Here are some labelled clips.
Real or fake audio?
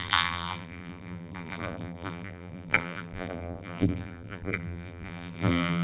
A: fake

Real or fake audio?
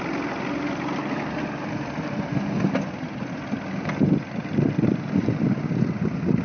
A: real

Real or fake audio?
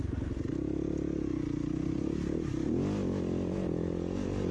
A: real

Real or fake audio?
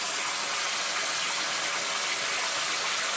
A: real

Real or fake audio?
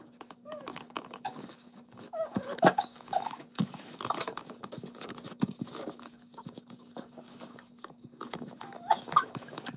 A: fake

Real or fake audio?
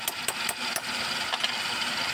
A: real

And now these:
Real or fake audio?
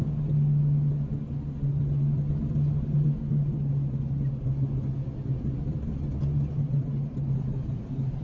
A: real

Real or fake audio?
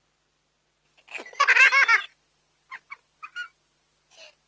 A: real